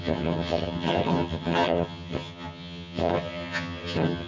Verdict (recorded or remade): remade